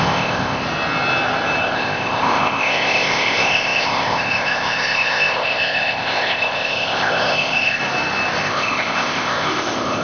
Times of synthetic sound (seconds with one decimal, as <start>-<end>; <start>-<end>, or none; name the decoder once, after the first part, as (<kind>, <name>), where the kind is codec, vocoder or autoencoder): 0.0-0.6 (codec, ZipCodec); 1.6-7.8; 8.4-10.0